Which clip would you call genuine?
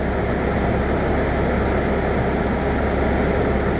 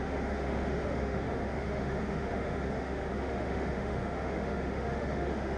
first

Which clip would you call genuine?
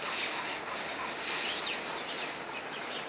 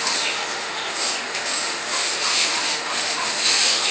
first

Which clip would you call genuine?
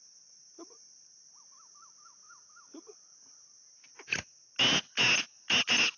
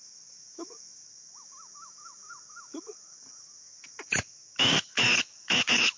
first